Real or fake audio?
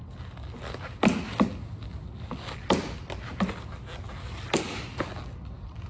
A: real